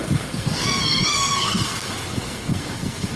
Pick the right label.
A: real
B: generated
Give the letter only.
B